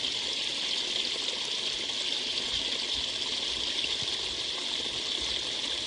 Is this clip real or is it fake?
real